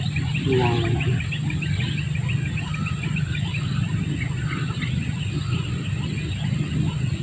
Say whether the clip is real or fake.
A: real